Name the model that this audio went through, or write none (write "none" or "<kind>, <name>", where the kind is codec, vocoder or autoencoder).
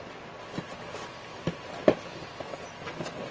none